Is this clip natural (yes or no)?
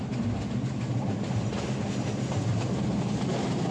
yes